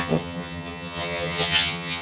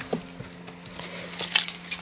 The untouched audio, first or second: second